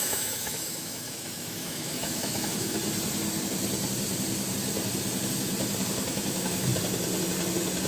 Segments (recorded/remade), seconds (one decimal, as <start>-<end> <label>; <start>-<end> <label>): 0.0-2.8 remade; 2.8-6.1 recorded; 6.1-6.7 remade; 6.7-7.9 recorded